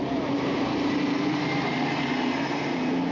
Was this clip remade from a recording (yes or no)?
yes